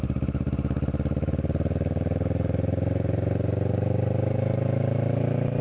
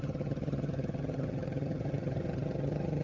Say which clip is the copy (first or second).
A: second